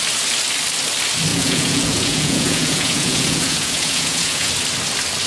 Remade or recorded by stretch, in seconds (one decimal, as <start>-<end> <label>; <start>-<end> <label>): 0.0-1.3 recorded; 1.3-4.5 remade; 4.5-5.3 recorded